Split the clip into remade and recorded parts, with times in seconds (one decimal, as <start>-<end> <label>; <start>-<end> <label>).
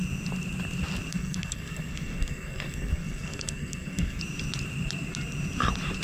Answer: 0.0-1.1 recorded; 1.1-4.2 remade; 4.2-6.0 recorded